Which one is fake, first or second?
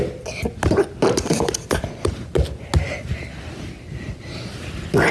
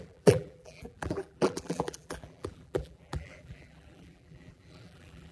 second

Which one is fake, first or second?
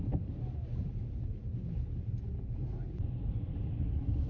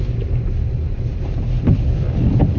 first